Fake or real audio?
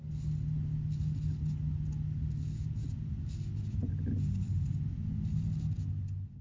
real